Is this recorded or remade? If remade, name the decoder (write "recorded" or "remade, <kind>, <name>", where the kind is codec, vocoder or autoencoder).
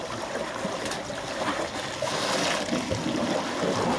recorded